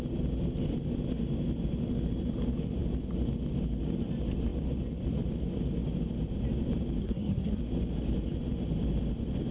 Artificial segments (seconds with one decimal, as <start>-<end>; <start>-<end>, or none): 7.0-7.6